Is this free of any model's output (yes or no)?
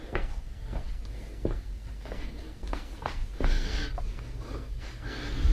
no